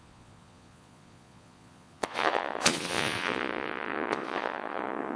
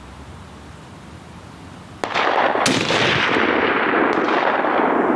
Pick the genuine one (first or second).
second